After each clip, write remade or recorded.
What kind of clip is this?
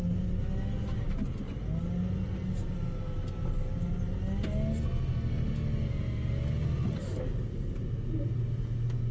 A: recorded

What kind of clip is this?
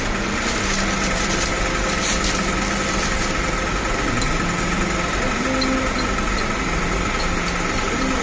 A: recorded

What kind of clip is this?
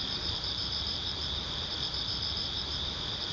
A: remade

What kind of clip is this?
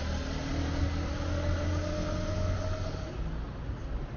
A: recorded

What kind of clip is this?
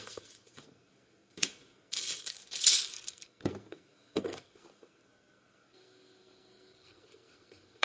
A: remade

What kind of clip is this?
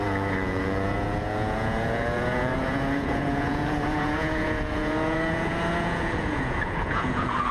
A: remade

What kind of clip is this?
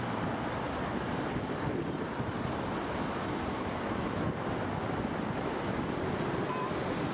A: recorded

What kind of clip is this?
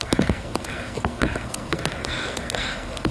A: remade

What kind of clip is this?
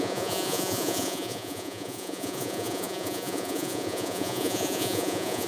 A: remade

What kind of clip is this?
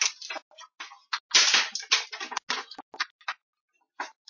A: recorded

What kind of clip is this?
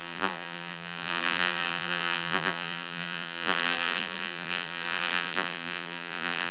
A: remade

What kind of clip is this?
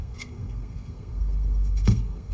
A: remade